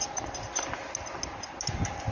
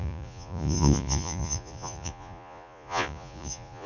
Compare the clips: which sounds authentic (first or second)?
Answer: first